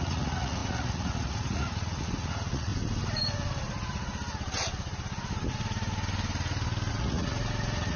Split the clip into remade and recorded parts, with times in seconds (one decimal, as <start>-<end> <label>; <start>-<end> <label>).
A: 0.0-2.7 remade; 2.7-6.9 recorded; 6.9-8.0 remade